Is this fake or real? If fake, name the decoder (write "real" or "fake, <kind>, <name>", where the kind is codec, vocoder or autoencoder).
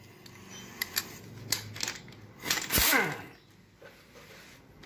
real